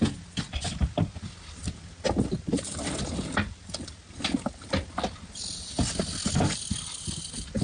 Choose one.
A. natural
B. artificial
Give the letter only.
A